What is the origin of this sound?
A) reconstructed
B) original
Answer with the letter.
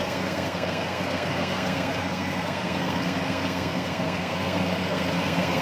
A